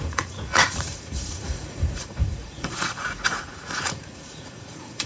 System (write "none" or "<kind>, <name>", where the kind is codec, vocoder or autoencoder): vocoder, Vocos